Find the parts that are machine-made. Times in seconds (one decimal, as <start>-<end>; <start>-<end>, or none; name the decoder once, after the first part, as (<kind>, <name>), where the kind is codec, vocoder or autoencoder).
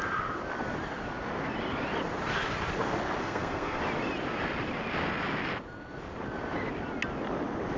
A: 3.2-3.8 (codec, SNAC)